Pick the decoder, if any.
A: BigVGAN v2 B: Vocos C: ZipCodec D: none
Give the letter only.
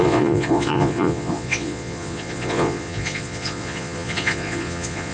B